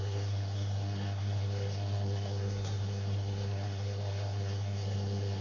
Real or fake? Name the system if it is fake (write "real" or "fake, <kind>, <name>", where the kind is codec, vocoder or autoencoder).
fake, codec, SNAC